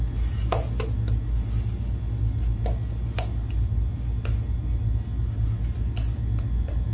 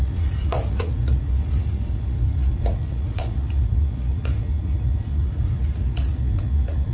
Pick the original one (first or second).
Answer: first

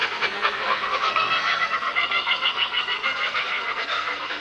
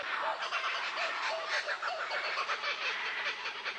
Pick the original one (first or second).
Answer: second